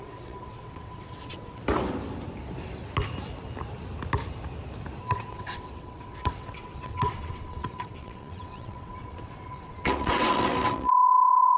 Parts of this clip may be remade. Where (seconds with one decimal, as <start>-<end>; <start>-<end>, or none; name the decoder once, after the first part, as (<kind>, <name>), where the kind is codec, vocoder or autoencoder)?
0.0-1.6 (vocoder, WaveNeXt); 5.0-11.6